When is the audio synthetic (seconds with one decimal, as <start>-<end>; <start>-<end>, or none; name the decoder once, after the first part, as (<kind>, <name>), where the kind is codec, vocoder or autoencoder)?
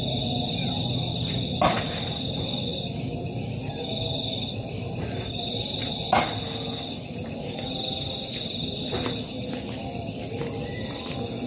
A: none